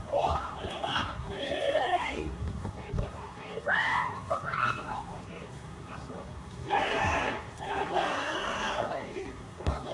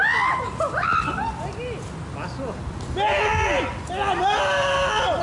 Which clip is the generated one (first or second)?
first